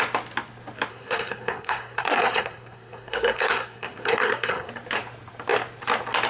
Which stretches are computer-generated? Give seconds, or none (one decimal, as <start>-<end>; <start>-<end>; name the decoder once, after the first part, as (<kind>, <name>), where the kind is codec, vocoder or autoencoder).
0.9-4.7 (codec, SNAC)

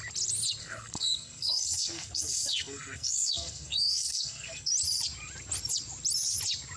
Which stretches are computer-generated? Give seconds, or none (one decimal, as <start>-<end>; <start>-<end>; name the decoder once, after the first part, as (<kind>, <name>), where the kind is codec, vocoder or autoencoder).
0.6-4.7 (codec, SNAC)

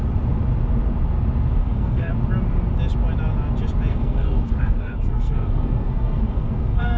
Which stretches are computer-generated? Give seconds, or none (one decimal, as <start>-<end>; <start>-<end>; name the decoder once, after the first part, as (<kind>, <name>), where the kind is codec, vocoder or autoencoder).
1.6-2.1 (codec, SNAC); 3.9-7.0

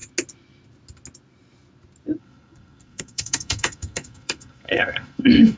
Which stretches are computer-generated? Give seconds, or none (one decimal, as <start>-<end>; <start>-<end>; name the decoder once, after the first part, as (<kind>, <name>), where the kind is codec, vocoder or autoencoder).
2.2-5.6 (codec, SNAC)